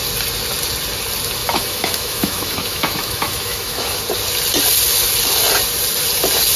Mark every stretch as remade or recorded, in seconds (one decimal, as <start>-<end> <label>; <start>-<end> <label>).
0.0-1.4 recorded; 1.4-4.0 remade; 4.0-6.6 recorded